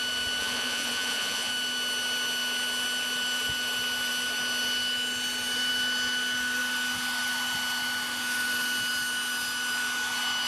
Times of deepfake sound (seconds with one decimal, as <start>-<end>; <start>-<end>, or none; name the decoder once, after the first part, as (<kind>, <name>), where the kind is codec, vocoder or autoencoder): 0.4-1.5 (vocoder, Vocos)